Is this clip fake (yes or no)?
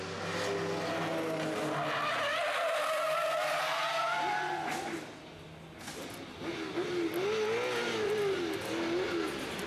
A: no